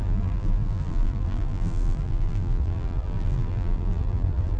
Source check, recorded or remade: remade